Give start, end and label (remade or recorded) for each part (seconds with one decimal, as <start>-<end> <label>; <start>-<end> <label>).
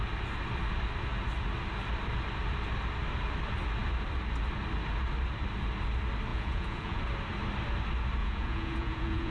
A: 0.0-6.3 recorded; 6.3-7.0 remade; 7.0-8.2 recorded; 8.2-9.3 remade